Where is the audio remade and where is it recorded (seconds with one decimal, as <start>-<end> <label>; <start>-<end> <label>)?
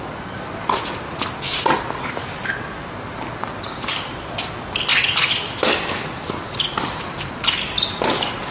0.0-3.4 recorded; 3.4-4.3 remade; 4.3-8.5 recorded